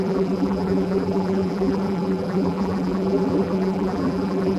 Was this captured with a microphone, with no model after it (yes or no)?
no